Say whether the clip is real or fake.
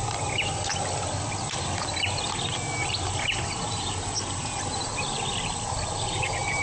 real